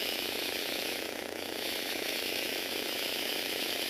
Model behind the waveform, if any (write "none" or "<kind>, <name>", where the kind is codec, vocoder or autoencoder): autoencoder, DAC-VAE